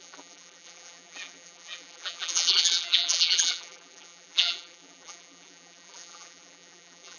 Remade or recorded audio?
remade